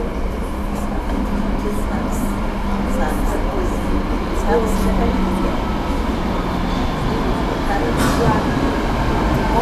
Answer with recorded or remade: recorded